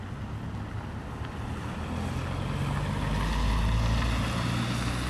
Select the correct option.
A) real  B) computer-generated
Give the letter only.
A